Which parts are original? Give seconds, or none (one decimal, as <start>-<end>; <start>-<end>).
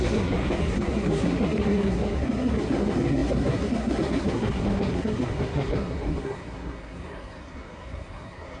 none